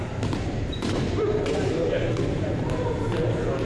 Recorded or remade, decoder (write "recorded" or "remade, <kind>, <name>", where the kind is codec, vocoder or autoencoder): remade, vocoder, BigVGAN v2